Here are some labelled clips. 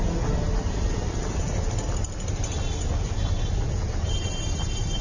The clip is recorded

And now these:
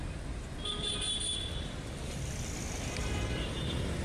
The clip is remade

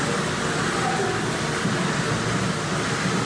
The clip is recorded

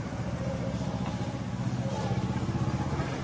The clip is recorded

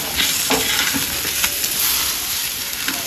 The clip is recorded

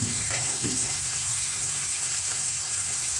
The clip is remade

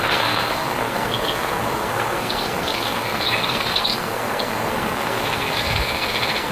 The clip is remade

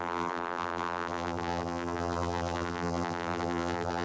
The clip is remade